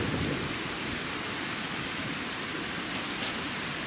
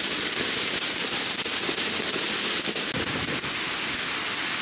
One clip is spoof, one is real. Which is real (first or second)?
second